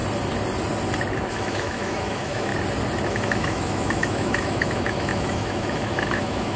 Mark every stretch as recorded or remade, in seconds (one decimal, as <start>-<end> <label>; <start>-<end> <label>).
0.0-1.3 recorded; 1.3-2.5 remade; 2.5-3.1 recorded; 3.1-6.6 remade